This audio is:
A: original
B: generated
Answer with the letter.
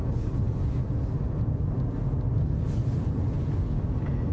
A